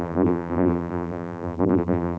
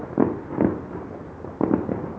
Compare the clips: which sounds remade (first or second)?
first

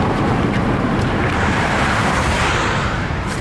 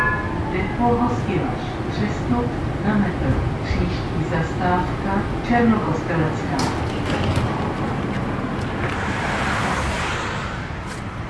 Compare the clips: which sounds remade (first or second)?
first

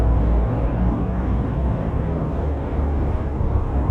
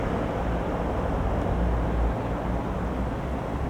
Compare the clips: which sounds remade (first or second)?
first